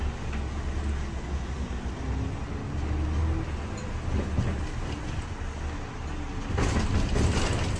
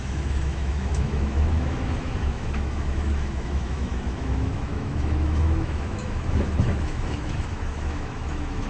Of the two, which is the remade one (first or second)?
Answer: second